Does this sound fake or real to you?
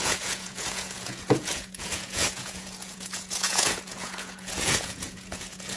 fake